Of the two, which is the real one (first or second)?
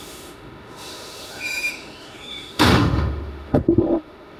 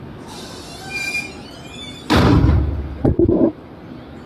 second